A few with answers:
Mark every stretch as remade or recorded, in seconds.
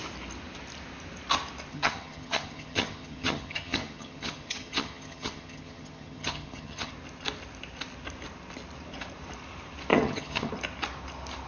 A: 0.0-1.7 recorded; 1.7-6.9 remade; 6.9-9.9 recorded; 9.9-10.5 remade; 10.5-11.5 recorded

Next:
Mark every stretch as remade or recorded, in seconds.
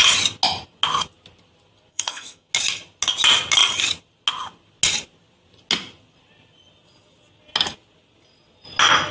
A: 0.0-1.9 recorded; 1.9-2.5 remade; 2.5-9.1 recorded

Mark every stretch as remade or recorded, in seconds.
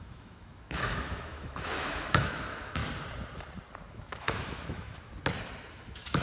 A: 0.0-2.8 remade; 2.8-3.9 recorded; 3.9-5.1 remade; 5.1-5.7 recorded; 5.7-6.2 remade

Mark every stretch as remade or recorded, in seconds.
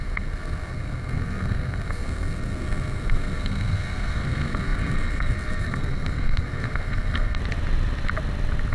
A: 0.0-7.4 remade; 7.4-8.7 recorded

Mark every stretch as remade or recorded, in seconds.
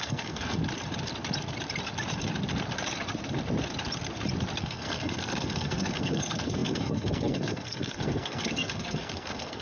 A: 0.0-0.6 remade; 0.6-4.6 recorded; 4.6-9.6 remade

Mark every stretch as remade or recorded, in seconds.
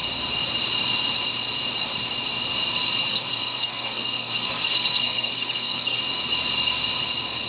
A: 0.0-3.1 recorded; 3.1-6.0 remade; 6.0-7.5 recorded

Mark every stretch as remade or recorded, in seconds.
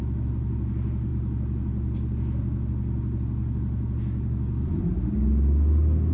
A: 0.0-6.1 recorded